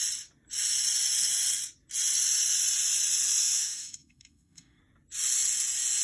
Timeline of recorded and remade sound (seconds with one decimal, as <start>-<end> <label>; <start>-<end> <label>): 0.0-3.4 recorded; 3.4-4.8 remade; 4.8-6.0 recorded